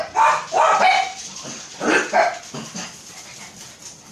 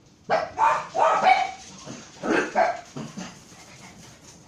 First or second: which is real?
first